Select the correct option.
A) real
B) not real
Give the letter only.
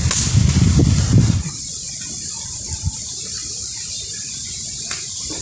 A